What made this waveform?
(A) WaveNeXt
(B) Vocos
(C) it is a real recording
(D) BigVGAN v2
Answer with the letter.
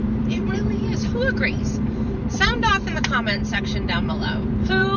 D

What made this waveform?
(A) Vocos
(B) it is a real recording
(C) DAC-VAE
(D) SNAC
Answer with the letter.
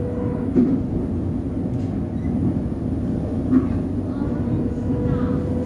B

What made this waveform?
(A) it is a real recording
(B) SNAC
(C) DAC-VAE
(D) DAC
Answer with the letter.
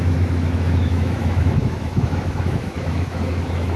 C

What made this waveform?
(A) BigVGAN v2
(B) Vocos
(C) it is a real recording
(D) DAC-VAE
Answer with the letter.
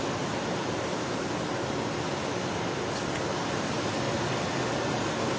C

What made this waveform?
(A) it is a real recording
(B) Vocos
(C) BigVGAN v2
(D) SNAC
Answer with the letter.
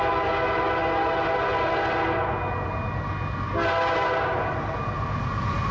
A